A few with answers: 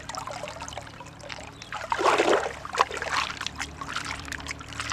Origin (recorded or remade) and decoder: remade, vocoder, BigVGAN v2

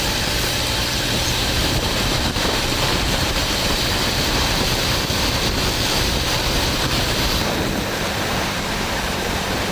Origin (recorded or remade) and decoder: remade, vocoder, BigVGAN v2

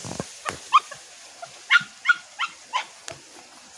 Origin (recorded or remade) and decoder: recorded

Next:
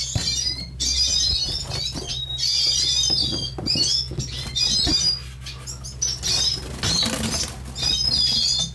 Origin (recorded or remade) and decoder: recorded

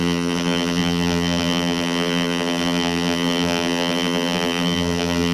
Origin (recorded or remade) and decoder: remade, vocoder, BigVGAN v2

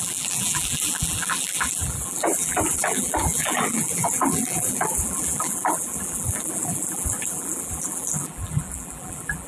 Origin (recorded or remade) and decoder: remade, vocoder, BigVGAN v2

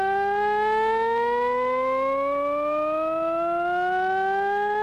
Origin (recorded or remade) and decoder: recorded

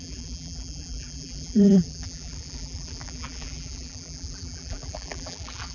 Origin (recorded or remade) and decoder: remade, vocoder, BigVGAN v2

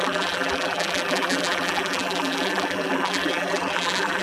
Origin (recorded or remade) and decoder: remade, vocoder, BigVGAN v2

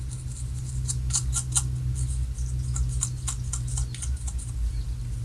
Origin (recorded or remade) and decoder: recorded